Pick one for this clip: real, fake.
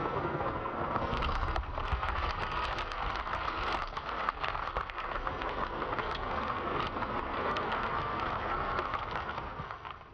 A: fake